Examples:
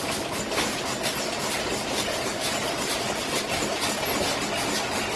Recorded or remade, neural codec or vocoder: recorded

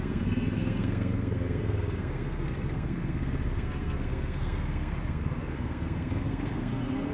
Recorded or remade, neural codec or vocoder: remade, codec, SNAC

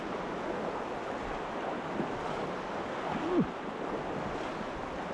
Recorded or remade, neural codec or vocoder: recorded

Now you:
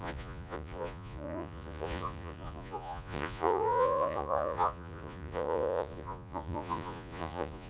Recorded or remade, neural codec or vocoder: remade, vocoder, Vocos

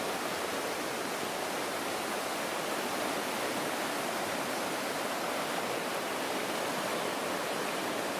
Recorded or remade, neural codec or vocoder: recorded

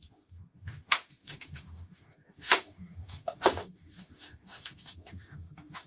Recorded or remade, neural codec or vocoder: remade, autoencoder, DAC-VAE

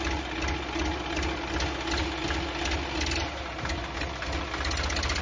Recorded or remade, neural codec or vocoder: recorded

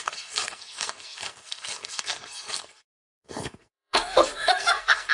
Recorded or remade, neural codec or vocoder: remade, codec, SNAC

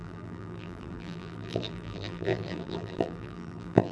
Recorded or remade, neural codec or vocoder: remade, vocoder, BigVGAN v2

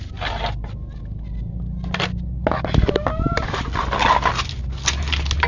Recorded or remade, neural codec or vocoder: recorded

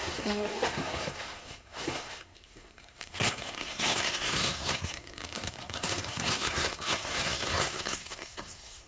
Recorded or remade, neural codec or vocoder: remade, codec, SNAC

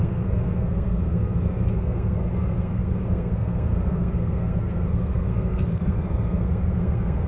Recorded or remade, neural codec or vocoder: remade, codec, SNAC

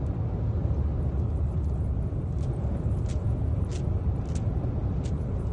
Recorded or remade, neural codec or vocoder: recorded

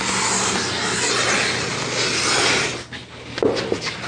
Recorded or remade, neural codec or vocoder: recorded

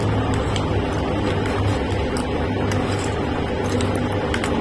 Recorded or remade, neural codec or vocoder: recorded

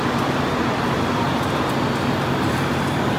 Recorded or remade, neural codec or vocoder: recorded